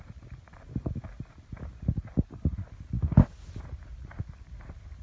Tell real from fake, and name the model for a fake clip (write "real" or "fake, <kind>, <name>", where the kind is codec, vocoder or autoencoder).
real